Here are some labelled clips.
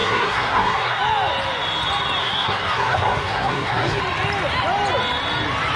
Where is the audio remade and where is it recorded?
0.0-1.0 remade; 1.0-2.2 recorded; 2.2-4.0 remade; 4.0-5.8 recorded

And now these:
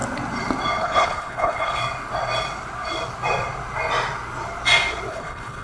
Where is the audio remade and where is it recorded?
0.0-0.8 recorded; 0.8-1.8 remade; 1.8-5.1 recorded; 5.1-5.6 remade